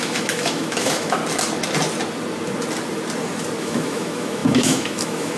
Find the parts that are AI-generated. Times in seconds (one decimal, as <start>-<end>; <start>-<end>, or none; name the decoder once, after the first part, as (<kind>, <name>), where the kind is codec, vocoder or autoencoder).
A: 0.0-1.2 (autoencoder, DAC-VAE); 3.6-5.4